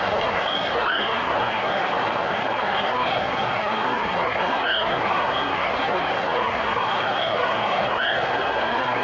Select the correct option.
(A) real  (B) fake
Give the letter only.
B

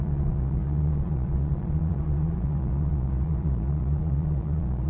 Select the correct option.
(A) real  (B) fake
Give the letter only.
B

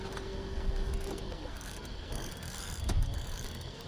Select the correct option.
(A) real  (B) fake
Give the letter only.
B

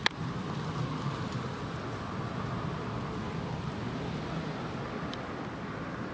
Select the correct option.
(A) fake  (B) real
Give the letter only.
B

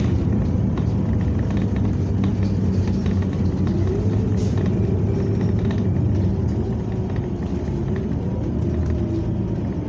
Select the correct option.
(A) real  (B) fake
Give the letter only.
A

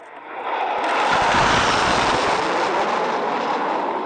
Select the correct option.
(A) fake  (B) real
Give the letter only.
B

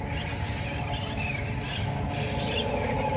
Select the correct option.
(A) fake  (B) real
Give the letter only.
B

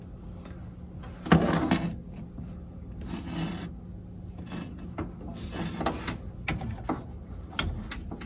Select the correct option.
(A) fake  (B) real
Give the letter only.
B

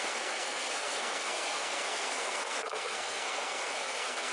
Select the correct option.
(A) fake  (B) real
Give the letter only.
A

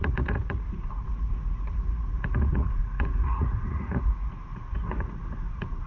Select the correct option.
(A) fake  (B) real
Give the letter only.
A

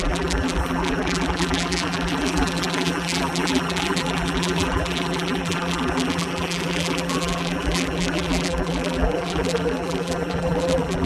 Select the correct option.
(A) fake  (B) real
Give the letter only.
A